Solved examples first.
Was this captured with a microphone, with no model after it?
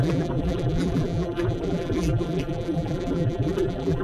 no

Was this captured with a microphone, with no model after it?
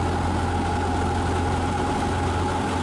yes